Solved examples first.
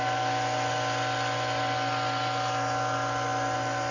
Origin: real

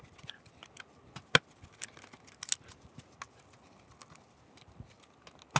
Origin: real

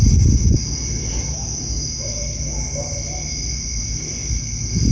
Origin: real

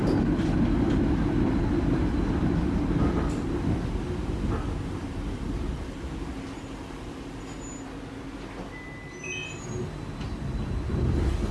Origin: real